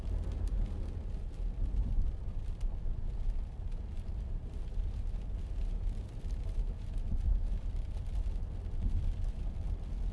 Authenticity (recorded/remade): remade